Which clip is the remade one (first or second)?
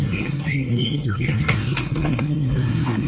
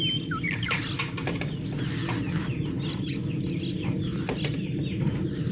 first